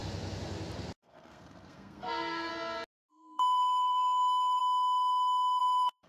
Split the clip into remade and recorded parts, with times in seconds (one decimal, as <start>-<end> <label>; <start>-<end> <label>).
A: 0.0-1.0 recorded; 1.0-2.5 remade; 2.5-3.1 recorded; 3.1-4.6 remade; 4.6-5.6 recorded; 5.6-6.1 remade